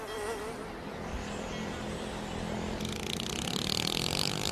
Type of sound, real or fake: real